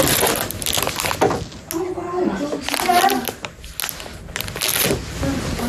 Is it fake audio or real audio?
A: real